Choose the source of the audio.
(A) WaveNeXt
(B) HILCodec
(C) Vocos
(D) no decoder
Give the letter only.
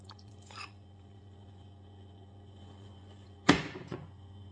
C